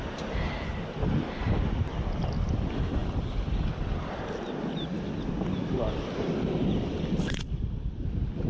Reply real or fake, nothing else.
real